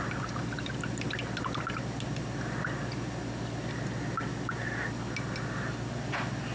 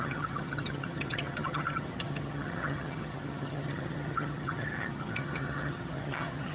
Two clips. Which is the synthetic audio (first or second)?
second